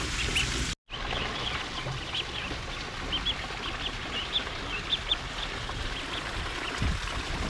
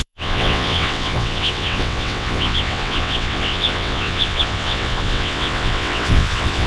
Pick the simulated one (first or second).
second